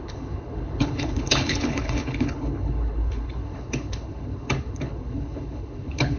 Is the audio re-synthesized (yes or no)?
yes